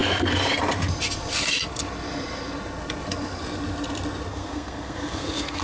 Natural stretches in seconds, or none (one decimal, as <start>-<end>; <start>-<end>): 0.0-4.3